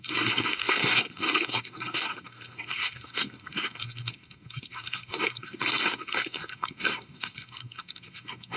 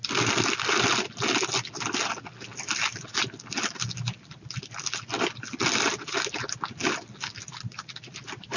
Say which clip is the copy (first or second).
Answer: first